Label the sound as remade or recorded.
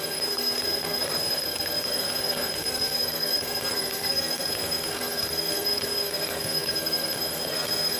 remade